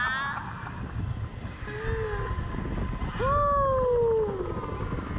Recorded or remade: recorded